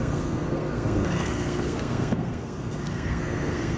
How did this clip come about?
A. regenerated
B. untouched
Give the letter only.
A